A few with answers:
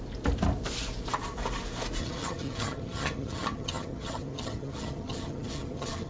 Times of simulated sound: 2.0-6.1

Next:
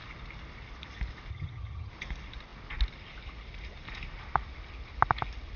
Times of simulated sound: 1.3-1.9

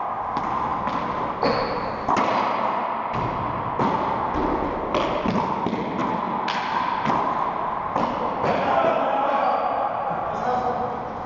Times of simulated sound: none

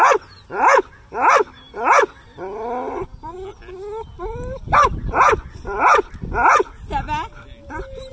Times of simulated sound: none

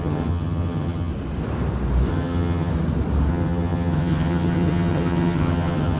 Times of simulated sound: 0.0-1.1; 2.1-2.7; 3.3-6.0

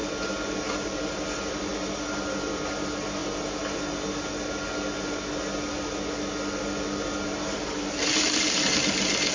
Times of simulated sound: none

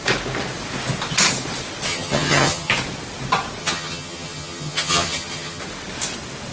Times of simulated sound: 1.9-2.7; 3.6-5.6